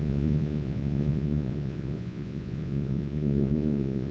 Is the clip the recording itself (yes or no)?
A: no